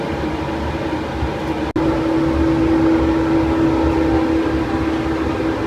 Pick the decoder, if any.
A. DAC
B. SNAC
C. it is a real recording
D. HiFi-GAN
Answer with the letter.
C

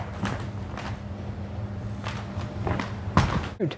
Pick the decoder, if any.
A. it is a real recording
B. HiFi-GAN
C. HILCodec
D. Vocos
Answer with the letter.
A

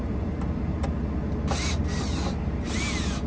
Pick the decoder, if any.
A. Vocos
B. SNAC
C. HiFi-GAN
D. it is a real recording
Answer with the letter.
D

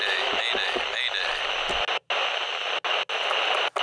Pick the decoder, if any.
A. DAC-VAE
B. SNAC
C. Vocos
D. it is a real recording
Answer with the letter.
D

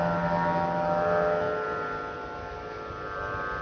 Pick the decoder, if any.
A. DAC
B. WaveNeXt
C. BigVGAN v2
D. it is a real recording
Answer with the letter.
D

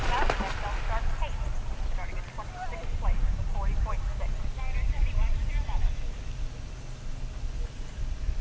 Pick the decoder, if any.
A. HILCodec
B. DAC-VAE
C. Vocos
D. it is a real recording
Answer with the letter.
D